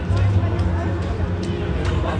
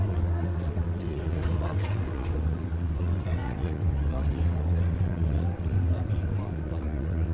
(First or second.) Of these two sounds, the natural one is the first